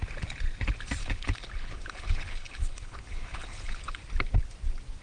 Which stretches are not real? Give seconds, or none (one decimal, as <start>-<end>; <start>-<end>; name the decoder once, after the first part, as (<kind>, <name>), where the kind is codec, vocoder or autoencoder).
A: 1.0-4.0 (codec, HILCodec)